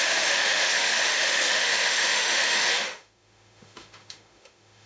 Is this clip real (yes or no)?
no